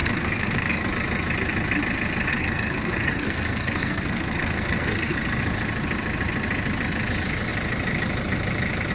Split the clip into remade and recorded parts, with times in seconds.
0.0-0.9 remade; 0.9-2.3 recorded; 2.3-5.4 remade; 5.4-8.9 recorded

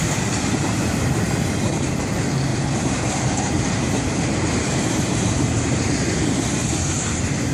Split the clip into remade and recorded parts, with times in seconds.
0.0-2.5 recorded; 2.5-5.9 remade; 5.9-7.5 recorded

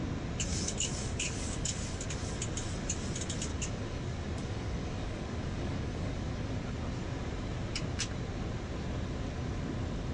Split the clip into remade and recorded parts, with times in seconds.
0.0-0.5 recorded; 0.5-2.4 remade; 2.4-3.5 recorded; 3.5-6.5 remade; 6.5-10.1 recorded